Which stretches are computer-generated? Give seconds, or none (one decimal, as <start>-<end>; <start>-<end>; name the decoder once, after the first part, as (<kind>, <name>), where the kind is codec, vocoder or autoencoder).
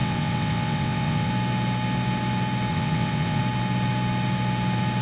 0.0-1.3 (vocoder, WaveNeXt); 2.7-3.4